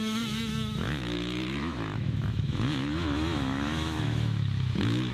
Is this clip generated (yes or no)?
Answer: yes